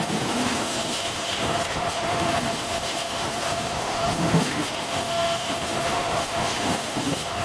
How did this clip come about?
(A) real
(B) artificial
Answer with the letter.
B